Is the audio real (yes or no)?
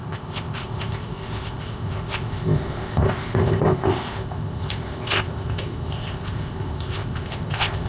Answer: no